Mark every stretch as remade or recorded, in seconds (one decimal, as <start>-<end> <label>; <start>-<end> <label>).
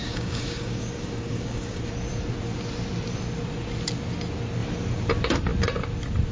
0.0-1.8 remade; 1.8-6.3 recorded